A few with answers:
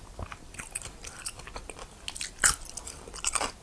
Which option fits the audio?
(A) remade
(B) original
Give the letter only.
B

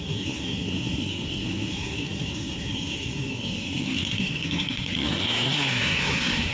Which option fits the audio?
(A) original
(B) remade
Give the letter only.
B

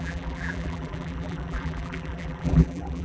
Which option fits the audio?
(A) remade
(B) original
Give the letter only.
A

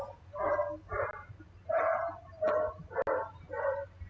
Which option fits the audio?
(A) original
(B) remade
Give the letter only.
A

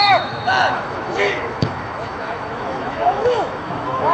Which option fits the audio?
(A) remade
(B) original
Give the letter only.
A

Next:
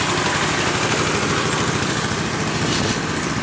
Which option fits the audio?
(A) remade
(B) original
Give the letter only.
B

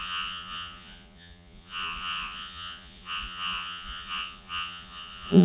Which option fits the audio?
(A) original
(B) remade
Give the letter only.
B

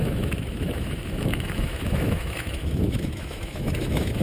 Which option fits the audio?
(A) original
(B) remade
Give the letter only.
B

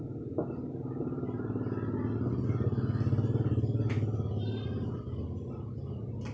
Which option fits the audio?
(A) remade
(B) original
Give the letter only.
B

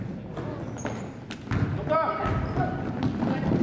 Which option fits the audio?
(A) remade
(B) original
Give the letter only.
B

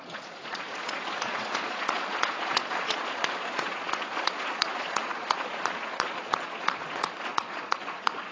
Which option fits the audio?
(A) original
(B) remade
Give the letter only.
B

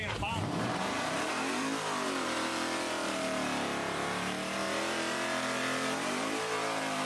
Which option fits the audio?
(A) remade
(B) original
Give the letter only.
A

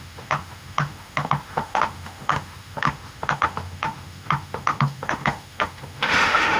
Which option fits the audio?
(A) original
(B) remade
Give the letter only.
B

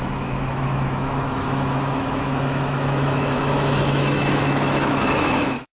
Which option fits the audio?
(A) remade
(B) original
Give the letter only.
A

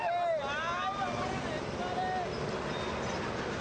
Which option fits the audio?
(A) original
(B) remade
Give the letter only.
A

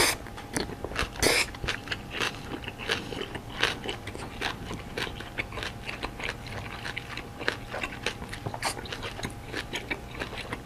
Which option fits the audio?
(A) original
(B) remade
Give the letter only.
A